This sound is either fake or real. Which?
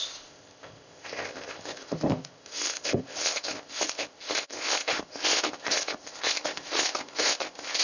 fake